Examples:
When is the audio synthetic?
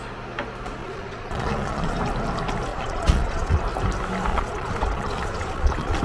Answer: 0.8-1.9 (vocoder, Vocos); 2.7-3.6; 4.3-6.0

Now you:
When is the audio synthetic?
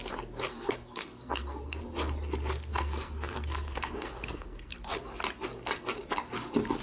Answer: 0.5-1.8 (codec, SNAC); 2.7-4.9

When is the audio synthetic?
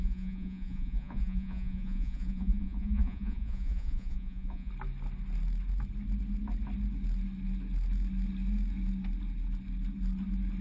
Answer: 0.0-4.7 (vocoder, Vocos)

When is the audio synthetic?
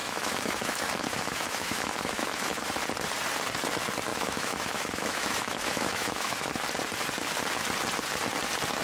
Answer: 0.0-2.7 (autoencoder, DAC-VAE); 4.1-6.5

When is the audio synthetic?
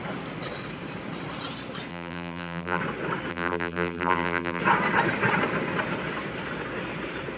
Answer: 1.9-2.8 (vocoder, BigVGAN v2); 3.3-4.6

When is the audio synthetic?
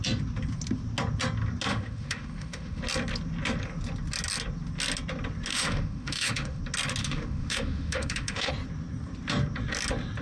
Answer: 1.7-2.8 (autoencoder, DAC-VAE); 5.5-6.6; 7.0-8.5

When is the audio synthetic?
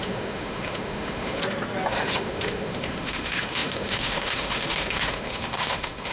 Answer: 0.0-1.4 (autoencoder, DAC-VAE); 1.9-6.1